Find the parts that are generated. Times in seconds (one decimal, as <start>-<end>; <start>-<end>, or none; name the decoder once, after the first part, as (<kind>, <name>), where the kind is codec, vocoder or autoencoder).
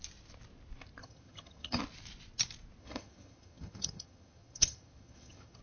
1.0-1.8 (vocoder, HiFi-GAN); 2.8-5.6